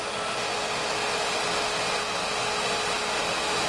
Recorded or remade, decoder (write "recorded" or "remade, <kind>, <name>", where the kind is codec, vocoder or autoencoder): recorded